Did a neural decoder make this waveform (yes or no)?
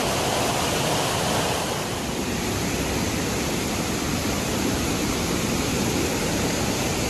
yes